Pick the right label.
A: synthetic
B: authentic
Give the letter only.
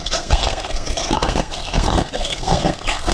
A